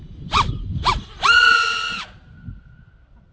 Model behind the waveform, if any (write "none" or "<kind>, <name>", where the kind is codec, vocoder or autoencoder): none